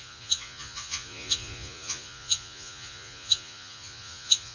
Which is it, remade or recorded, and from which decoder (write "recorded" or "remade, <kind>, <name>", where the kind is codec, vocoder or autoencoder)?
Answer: remade, vocoder, Vocos